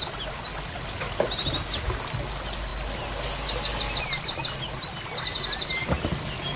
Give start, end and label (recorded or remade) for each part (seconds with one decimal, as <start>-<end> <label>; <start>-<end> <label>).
0.0-6.6 recorded